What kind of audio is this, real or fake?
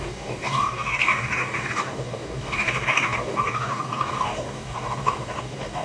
fake